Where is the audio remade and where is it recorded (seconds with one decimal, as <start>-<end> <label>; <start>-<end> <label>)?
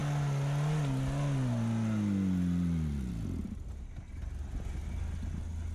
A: 0.0-5.7 recorded